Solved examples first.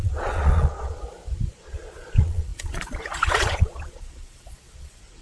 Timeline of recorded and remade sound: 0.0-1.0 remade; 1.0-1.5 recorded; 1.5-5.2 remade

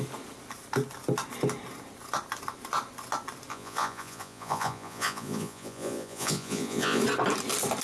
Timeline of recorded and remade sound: 0.0-3.5 recorded; 3.5-7.0 remade; 7.0-7.8 recorded

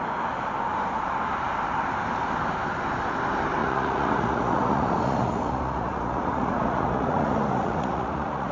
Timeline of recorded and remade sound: 0.0-3.6 recorded; 3.6-8.5 remade

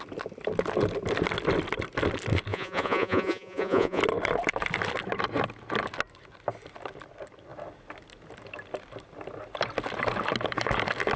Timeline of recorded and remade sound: 0.0-2.5 recorded; 2.5-4.0 remade; 4.0-11.2 recorded

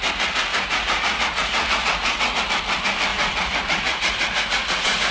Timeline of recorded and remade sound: 0.0-0.5 recorded; 0.5-2.4 remade; 2.4-3.1 recorded; 3.1-5.1 remade

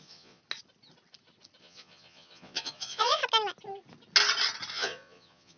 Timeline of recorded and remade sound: 0.0-0.4 remade; 0.4-1.6 recorded; 1.6-3.2 remade; 3.2-4.7 recorded; 4.7-5.6 remade

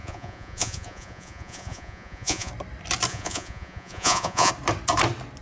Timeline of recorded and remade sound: 0.0-2.5 remade; 2.5-3.1 recorded; 3.1-4.5 remade; 4.5-5.4 recorded

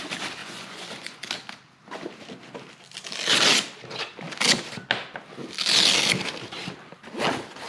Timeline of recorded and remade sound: 0.0-0.4 recorded; 0.4-1.3 remade; 1.3-7.7 recorded